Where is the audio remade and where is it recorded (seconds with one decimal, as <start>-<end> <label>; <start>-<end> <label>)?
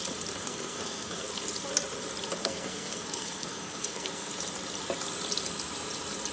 0.0-0.4 recorded; 0.4-1.3 remade; 1.3-2.4 recorded; 2.4-4.3 remade; 4.3-6.3 recorded